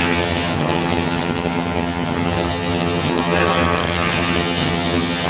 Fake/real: fake